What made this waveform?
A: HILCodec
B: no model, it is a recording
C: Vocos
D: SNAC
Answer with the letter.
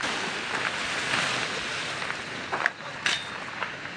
B